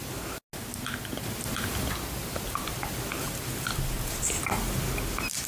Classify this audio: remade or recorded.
recorded